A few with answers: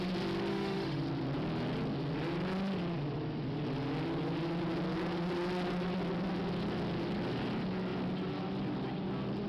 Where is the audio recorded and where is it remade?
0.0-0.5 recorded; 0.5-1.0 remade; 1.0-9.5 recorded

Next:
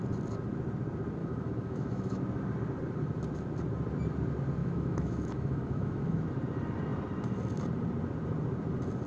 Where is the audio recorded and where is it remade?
0.0-1.2 recorded; 1.2-2.2 remade; 2.2-4.6 recorded; 4.6-6.2 remade; 6.2-9.1 recorded

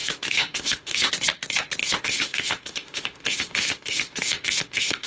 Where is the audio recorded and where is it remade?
0.0-1.1 remade; 1.1-1.8 recorded; 1.8-5.1 remade

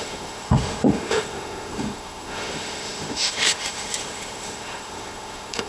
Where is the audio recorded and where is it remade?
0.0-5.7 remade

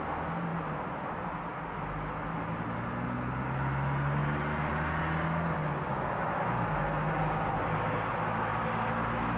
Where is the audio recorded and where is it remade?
0.0-9.4 recorded

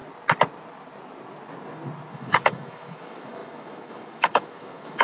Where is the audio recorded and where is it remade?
0.0-2.1 recorded; 2.1-5.0 remade